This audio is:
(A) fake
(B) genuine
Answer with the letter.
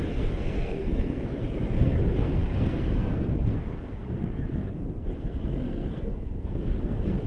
A